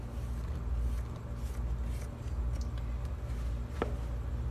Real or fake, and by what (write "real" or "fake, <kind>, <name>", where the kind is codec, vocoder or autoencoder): real